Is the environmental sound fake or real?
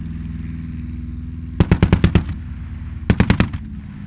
real